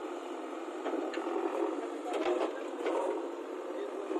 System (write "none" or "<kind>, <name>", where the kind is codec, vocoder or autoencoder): none